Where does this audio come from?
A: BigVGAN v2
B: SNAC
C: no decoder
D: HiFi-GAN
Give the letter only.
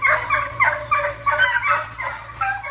A